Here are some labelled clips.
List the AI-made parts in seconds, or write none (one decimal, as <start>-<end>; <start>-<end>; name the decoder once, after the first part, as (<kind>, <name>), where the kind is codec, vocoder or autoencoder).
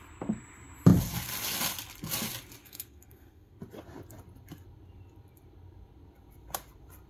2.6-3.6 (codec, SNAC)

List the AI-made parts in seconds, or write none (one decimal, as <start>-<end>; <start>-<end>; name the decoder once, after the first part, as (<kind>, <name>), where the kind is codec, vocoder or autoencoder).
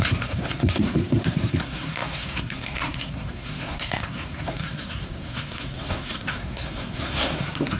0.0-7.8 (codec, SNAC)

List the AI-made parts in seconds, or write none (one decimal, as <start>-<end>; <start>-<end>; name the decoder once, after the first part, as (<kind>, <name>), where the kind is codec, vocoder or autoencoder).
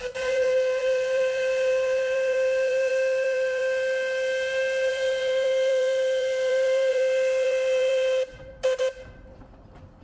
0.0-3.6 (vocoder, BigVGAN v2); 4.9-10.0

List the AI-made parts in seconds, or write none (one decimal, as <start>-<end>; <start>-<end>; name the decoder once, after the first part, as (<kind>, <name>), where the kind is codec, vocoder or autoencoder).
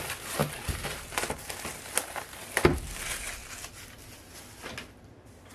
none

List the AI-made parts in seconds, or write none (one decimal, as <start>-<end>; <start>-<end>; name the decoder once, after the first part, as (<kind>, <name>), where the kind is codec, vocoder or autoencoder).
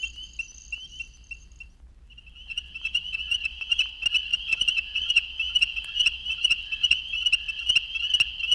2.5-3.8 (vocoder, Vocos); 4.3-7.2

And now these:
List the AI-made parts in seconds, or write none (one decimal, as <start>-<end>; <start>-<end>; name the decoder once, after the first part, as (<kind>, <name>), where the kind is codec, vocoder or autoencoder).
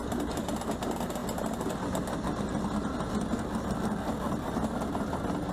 none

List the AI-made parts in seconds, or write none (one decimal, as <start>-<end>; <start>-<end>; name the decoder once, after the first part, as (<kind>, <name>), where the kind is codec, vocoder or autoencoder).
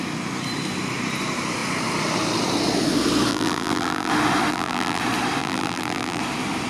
3.3-4.1 (vocoder, BigVGAN v2); 4.5-5.0; 5.4-6.2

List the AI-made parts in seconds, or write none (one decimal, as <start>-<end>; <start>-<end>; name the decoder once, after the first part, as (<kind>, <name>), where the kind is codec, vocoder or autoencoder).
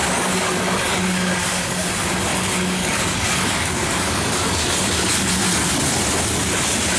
0.0-1.9 (codec, DAC); 2.3-5.3